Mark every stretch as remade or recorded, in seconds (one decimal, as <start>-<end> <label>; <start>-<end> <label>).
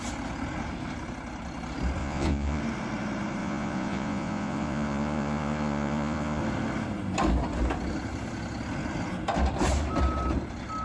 0.0-2.0 recorded; 2.0-2.6 remade; 2.6-3.4 recorded; 3.4-6.4 remade; 6.4-10.8 recorded